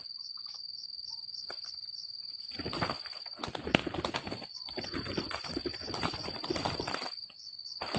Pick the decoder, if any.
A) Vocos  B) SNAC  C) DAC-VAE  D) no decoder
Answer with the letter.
D